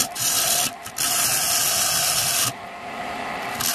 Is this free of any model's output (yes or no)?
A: yes